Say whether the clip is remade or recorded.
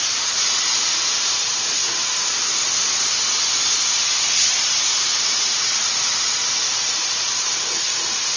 recorded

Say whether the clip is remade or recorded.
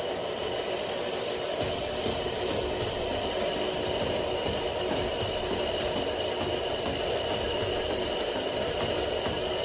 recorded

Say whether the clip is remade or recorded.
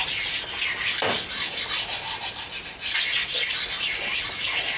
recorded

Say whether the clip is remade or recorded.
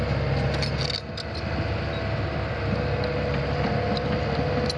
recorded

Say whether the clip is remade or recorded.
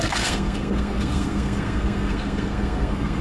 remade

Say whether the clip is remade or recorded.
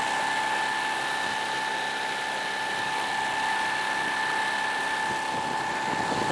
recorded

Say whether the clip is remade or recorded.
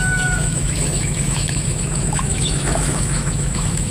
remade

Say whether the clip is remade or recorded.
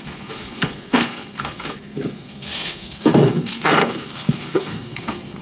remade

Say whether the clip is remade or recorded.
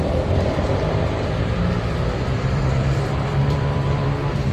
remade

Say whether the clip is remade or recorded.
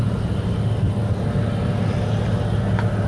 recorded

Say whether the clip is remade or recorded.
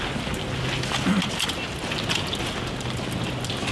recorded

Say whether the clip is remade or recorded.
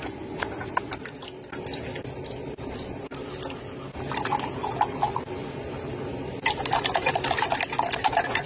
recorded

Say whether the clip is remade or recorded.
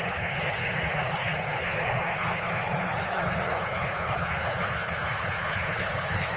remade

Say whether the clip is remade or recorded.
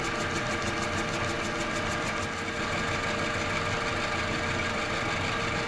recorded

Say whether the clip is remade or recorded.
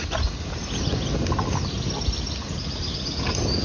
recorded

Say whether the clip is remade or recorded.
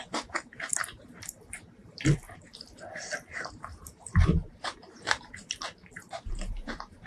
remade